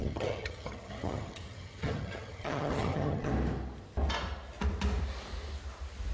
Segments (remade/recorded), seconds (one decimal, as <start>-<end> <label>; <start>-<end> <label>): 0.0-3.3 remade; 3.3-6.1 recorded